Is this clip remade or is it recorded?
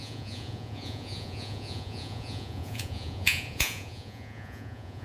remade